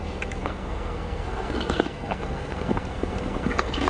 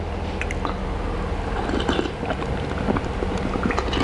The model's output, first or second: first